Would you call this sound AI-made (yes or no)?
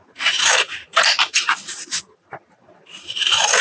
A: yes